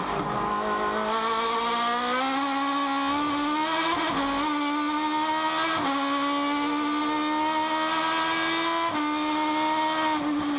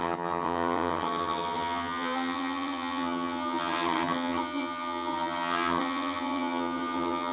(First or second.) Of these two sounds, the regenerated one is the second